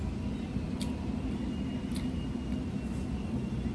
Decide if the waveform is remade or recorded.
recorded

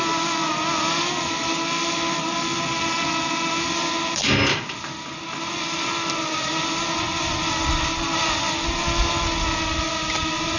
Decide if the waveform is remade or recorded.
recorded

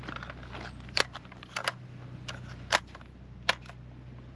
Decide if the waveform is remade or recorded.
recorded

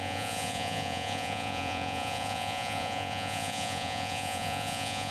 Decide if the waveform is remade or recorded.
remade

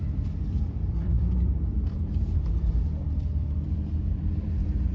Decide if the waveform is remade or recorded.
remade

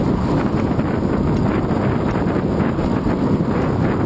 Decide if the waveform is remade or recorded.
recorded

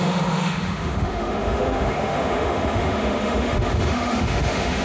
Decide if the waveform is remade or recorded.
remade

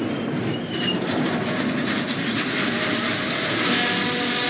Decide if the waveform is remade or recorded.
recorded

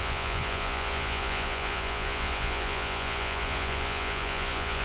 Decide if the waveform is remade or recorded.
remade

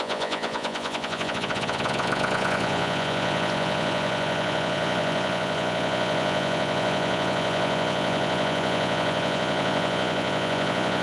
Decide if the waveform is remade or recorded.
remade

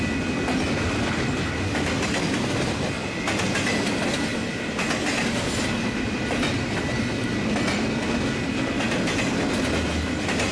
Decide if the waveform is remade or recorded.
recorded